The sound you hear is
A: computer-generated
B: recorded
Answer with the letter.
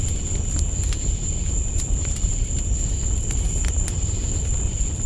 B